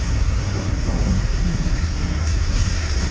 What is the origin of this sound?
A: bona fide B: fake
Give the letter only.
B